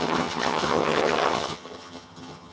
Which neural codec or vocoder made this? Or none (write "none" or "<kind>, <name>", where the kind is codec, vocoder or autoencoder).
vocoder, HiFi-GAN